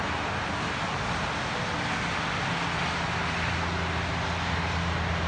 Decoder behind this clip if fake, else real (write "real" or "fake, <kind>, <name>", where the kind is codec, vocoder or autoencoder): real